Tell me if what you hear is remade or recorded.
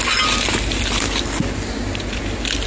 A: recorded